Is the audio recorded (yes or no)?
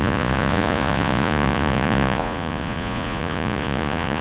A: no